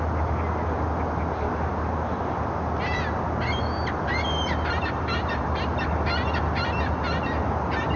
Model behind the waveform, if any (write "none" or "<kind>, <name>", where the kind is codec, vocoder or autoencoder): none